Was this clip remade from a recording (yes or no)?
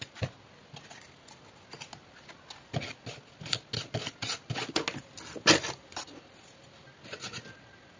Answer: no